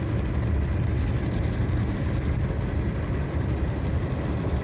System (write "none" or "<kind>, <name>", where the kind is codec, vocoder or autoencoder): none